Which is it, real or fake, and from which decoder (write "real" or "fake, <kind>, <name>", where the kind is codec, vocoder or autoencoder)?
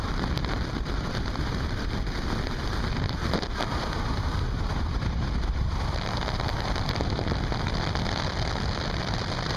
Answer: fake, vocoder, BigVGAN v2